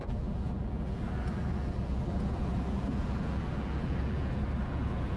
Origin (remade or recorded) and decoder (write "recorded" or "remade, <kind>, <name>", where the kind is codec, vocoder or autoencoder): remade, vocoder, BigVGAN v2